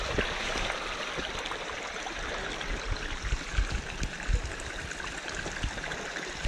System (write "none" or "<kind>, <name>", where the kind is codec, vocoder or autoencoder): none